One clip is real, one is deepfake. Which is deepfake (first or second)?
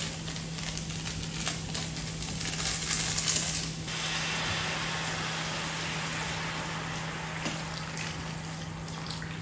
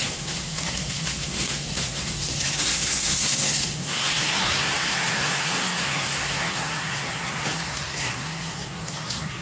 second